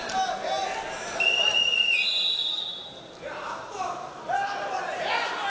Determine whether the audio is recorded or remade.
recorded